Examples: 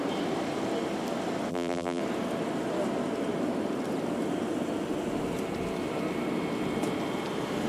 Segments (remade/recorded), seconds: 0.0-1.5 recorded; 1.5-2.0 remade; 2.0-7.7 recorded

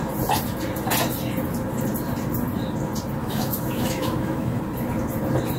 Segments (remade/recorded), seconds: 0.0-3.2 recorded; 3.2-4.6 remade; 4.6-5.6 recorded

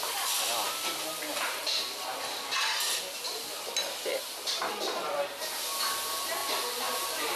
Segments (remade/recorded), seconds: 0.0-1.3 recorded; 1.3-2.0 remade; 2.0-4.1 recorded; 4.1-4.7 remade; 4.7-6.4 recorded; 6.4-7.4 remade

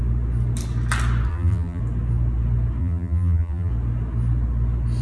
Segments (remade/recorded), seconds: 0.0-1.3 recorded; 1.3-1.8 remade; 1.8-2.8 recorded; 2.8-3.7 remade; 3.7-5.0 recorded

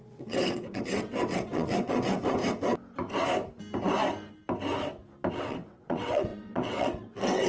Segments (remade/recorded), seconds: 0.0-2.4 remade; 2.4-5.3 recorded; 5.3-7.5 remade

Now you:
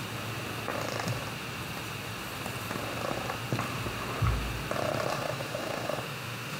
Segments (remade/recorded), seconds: 0.0-5.1 recorded; 5.1-6.6 remade

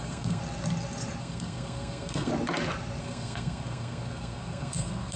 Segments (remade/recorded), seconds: 0.0-0.4 remade; 0.4-1.2 recorded; 1.2-2.3 remade; 2.3-3.0 recorded; 3.0-5.2 remade